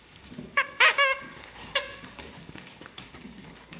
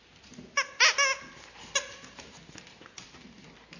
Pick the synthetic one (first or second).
first